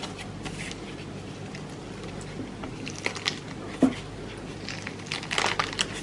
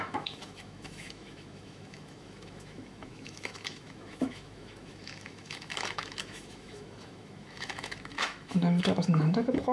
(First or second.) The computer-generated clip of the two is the second